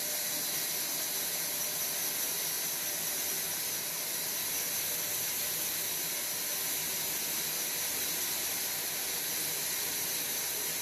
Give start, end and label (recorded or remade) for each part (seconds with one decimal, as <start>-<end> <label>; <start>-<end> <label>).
0.0-10.8 recorded